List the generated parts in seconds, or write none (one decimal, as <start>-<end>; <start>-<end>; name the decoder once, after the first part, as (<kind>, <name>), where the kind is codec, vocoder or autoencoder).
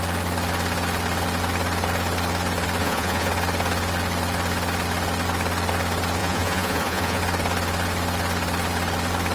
2.8-3.3 (vocoder, Vocos); 6.2-7.2